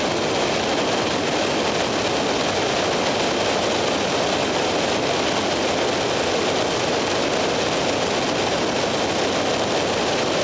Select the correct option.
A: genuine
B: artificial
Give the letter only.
A